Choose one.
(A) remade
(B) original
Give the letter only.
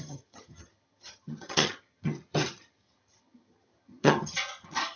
A